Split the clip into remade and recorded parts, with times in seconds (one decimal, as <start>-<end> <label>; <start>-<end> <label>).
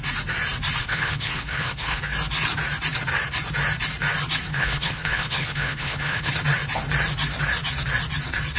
0.0-0.8 recorded; 0.8-2.0 remade; 2.0-4.5 recorded; 4.5-6.3 remade; 6.3-8.6 recorded